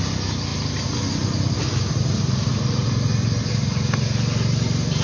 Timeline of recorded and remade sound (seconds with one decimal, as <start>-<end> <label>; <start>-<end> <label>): 0.0-5.0 recorded